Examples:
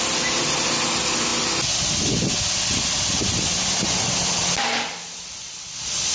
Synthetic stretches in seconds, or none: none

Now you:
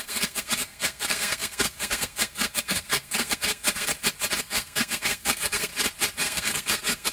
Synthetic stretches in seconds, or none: 0.0-3.9 (codec, SNAC); 4.4-5.7; 6.2-7.1

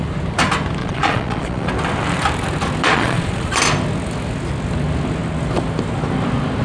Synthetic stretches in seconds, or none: 0.8-1.7 (vocoder, Vocos); 2.8-3.5

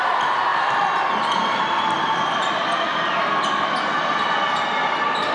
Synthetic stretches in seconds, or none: none

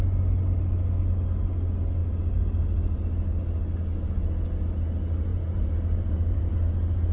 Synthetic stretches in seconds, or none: 5.3-6.5 (vocoder, BigVGAN v2)

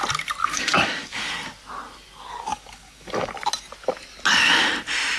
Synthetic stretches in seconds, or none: 0.4-1.2 (codec, DAC); 2.5-3.3

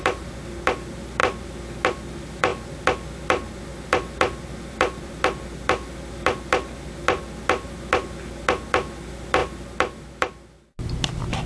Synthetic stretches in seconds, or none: none

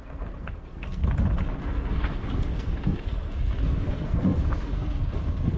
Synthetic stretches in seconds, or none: 0.0-1.0 (codec, SNAC); 1.6-5.6